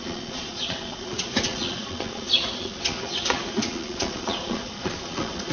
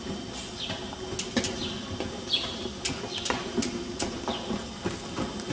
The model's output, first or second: first